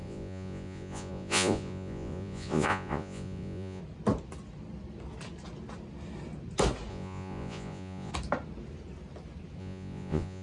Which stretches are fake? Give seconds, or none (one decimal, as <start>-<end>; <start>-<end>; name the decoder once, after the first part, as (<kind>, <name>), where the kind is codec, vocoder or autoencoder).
0.0-3.8 (vocoder, Vocos); 6.9-8.1; 9.6-10.4